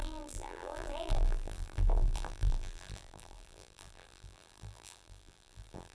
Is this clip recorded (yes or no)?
no